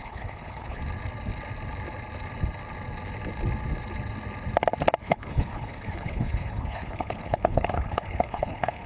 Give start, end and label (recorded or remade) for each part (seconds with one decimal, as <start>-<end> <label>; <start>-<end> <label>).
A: 0.0-0.8 remade; 0.8-5.0 recorded; 5.0-8.9 remade